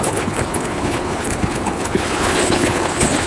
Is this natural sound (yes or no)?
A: no